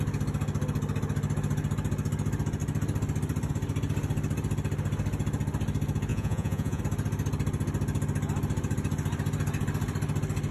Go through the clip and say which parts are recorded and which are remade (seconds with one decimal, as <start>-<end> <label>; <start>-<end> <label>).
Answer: 0.0-6.1 recorded; 6.1-6.8 remade; 6.8-10.5 recorded